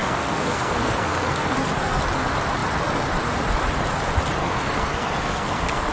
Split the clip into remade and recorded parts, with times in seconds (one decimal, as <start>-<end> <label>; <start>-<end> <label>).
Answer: 0.0-2.0 remade; 2.0-4.4 recorded; 4.4-5.9 remade